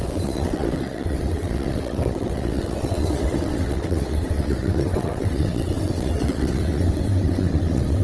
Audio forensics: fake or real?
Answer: fake